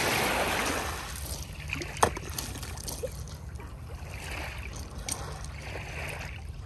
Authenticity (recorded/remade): recorded